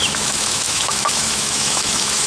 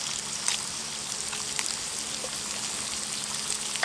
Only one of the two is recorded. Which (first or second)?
second